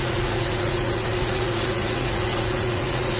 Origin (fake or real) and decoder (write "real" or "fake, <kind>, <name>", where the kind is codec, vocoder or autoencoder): fake, vocoder, Vocos